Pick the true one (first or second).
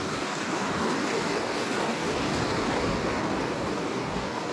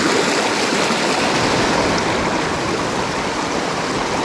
second